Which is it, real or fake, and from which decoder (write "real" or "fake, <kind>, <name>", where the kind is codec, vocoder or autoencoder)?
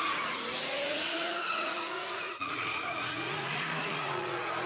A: fake, vocoder, Vocos